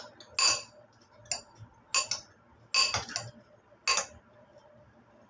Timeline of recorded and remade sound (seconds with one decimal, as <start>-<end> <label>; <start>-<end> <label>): 0.0-5.3 recorded